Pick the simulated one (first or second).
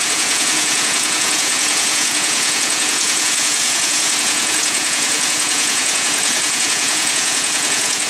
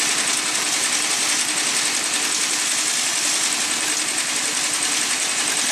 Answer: first